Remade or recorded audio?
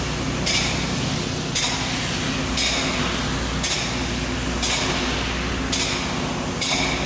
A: recorded